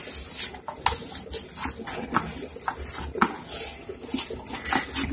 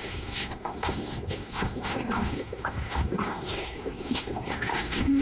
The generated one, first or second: second